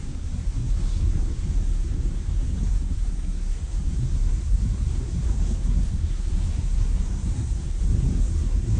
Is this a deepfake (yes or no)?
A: yes